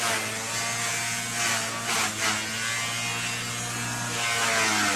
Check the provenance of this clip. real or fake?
real